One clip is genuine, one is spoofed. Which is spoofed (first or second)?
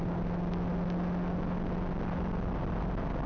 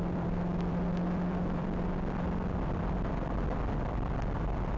second